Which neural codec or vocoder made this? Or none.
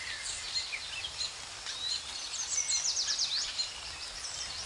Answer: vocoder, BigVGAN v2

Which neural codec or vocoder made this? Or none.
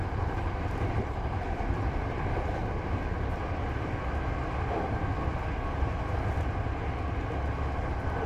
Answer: none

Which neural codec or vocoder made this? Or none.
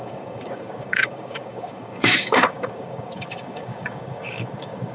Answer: codec, DAC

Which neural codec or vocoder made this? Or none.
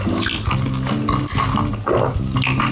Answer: none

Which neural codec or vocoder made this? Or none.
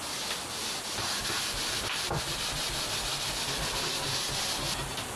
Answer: none